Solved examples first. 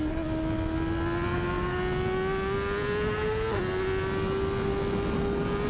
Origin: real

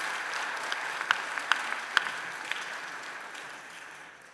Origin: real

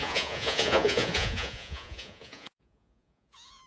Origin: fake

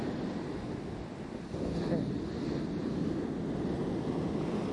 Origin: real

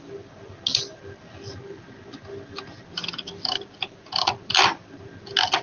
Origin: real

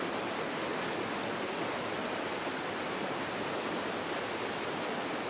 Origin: real